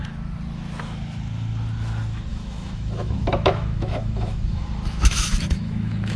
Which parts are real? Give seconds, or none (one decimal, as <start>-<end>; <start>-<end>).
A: 0.0-2.3